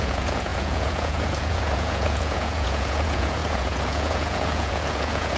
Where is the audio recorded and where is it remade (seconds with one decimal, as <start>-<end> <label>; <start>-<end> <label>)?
0.0-5.4 remade